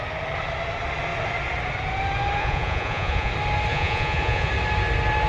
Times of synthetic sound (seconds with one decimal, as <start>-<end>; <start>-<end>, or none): 2.4-3.3; 3.7-4.5